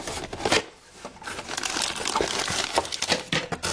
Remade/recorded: recorded